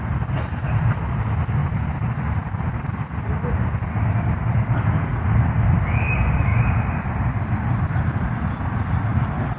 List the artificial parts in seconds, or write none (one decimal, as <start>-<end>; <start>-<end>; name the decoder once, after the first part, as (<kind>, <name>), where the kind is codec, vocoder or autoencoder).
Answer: none